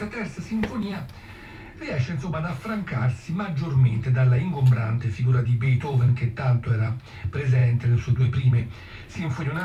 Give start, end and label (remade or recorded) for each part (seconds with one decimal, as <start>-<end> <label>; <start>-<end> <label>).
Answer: 0.0-1.5 remade; 1.5-5.4 recorded; 5.4-9.6 remade